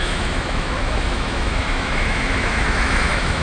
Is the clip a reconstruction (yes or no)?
yes